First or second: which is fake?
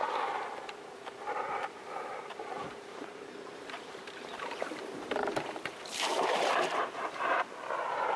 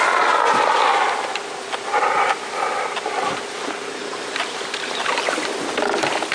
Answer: first